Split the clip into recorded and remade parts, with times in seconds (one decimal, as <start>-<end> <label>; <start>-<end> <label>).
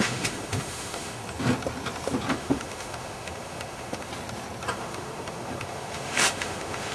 0.0-1.2 remade; 1.2-2.3 recorded; 2.3-4.1 remade; 4.1-4.7 recorded; 4.7-6.9 remade